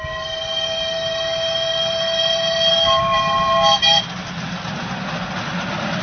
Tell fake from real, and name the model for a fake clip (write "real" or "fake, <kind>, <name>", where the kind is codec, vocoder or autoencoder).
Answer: real